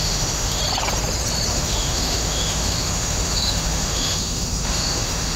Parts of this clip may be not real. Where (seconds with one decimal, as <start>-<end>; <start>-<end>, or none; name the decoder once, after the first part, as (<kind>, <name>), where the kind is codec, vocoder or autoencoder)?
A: 0.0-0.6 (autoencoder, DAC-VAE); 1.5-5.4